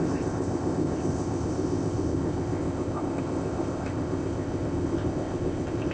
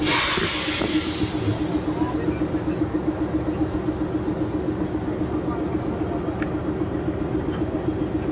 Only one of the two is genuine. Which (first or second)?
second